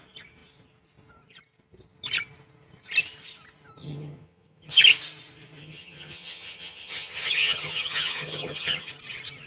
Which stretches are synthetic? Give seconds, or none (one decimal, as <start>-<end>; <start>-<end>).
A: 3.8-4.8; 5.6-8.9